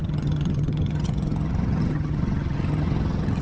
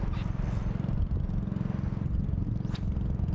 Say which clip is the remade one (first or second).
first